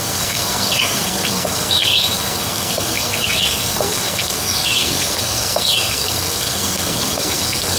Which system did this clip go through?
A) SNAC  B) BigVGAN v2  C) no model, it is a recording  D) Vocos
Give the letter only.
A